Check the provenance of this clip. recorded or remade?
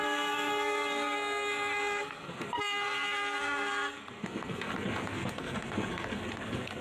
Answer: remade